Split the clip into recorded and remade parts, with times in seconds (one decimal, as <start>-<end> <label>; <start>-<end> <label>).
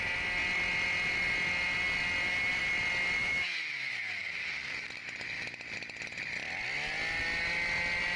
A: 0.0-3.2 recorded; 3.2-3.7 remade; 3.7-8.2 recorded